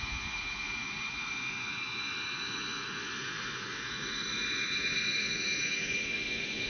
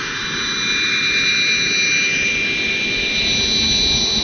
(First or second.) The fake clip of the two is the first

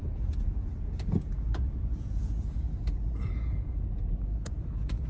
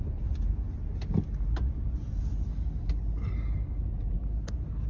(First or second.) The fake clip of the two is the first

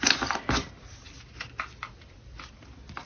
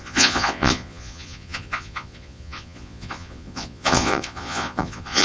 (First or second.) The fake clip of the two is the second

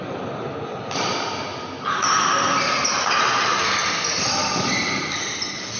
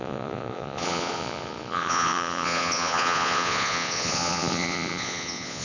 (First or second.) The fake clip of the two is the second